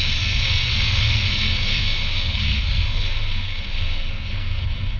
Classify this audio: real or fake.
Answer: fake